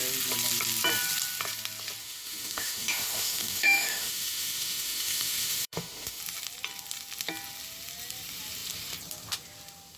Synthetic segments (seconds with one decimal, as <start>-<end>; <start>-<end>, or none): 2.0-6.2